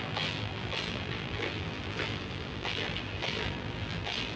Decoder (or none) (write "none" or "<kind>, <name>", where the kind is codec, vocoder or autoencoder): vocoder, BigVGAN v2